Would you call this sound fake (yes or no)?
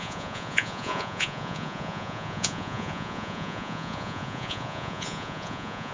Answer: yes